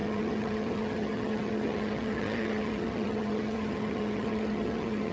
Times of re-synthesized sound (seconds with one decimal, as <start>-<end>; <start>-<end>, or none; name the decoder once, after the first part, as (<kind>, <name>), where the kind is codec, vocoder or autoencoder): 0.0-5.1 (vocoder, HiFi-GAN)